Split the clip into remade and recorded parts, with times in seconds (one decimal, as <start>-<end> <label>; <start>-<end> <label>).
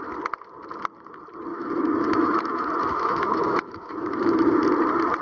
0.0-1.5 recorded; 1.5-4.6 remade; 4.6-5.2 recorded